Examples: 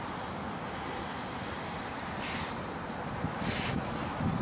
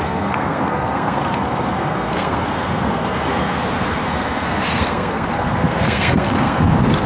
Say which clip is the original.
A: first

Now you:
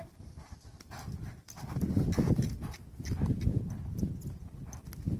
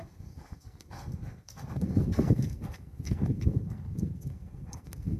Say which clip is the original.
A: first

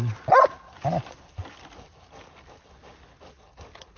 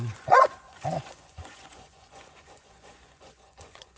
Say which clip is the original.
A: first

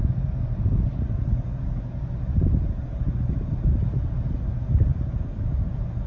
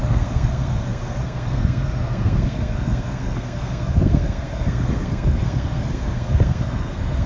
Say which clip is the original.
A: first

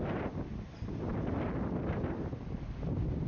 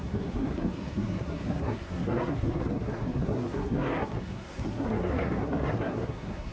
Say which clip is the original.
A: first